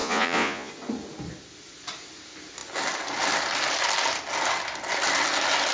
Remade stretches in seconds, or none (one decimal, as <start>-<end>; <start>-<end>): 0.0-0.7